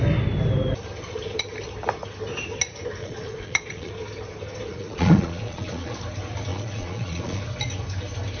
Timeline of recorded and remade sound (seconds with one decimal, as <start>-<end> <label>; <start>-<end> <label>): 0.0-3.0 recorded; 3.0-3.9 remade; 3.9-4.7 recorded; 4.7-5.9 remade; 5.9-6.5 recorded; 6.5-7.4 remade; 7.4-8.4 recorded